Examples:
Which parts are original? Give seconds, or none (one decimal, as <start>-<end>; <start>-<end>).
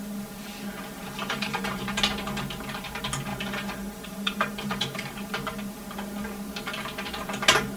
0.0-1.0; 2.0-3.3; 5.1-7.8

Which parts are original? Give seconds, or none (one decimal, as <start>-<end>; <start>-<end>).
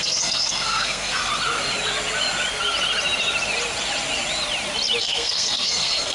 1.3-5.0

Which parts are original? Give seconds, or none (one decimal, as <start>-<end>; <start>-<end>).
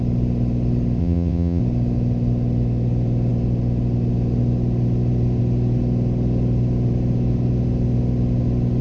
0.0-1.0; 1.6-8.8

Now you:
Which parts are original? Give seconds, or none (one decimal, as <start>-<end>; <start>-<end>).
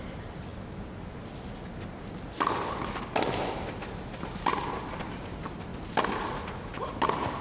0.0-7.4